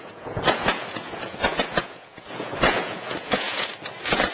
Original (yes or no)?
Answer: no